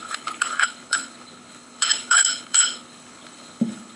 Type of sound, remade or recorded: remade